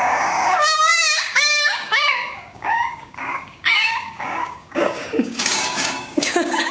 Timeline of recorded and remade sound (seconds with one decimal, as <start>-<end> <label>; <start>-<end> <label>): 0.0-6.7 remade

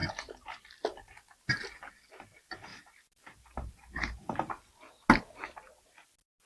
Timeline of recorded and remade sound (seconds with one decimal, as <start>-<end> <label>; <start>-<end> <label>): 0.0-0.6 remade; 0.6-2.7 recorded; 2.7-4.5 remade; 4.5-6.5 recorded

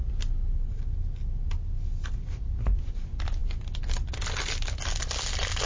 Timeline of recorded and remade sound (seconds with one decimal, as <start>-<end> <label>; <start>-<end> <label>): 0.0-5.7 recorded

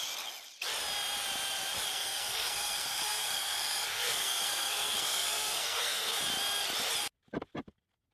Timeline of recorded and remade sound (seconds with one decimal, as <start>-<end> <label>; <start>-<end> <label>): 0.0-1.9 recorded; 1.9-6.2 remade; 6.2-8.1 recorded